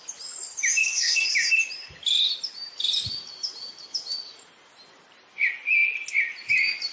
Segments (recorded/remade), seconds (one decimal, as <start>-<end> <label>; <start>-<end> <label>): 0.0-0.8 recorded; 0.8-1.3 remade; 1.3-6.9 recorded